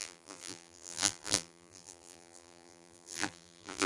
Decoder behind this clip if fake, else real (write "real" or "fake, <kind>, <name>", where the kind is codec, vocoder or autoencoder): fake, vocoder, BigVGAN v2